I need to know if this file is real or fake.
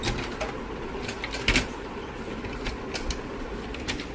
real